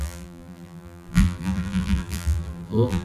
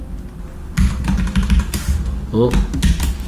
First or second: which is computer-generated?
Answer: first